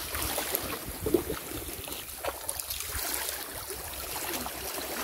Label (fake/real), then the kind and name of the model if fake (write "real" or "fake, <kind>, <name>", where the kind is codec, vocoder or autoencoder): real